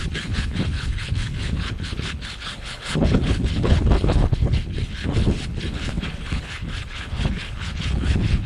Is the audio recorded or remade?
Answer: remade